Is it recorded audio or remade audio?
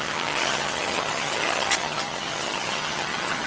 remade